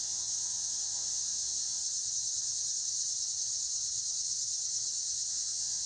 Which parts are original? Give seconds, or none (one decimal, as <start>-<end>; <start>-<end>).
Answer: 1.8-5.3